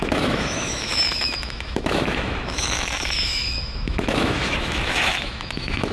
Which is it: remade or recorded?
remade